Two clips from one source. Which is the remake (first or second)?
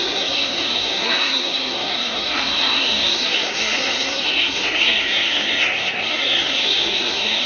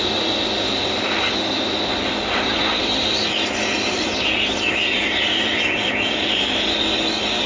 first